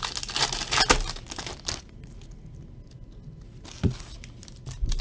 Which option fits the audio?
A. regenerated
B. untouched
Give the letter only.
B